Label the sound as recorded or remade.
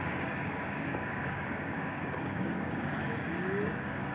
remade